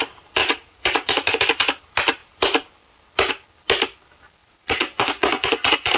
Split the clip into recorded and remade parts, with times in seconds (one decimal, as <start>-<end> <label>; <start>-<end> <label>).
0.0-0.4 recorded; 0.4-1.4 remade; 1.4-4.4 recorded; 4.4-6.0 remade